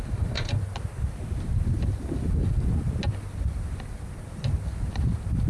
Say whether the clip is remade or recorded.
recorded